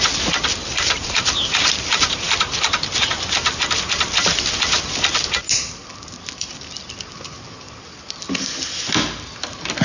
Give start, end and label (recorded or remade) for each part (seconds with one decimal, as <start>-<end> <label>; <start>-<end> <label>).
0.0-0.6 recorded; 0.6-2.5 remade; 2.5-9.8 recorded